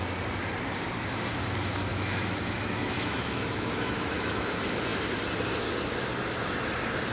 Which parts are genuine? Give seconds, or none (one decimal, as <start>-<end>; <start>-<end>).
0.0-1.9; 4.5-7.1